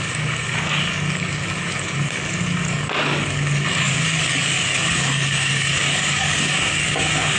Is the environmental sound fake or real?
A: fake